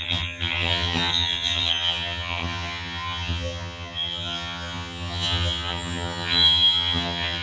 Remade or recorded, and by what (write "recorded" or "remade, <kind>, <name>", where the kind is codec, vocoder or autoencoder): remade, vocoder, HiFi-GAN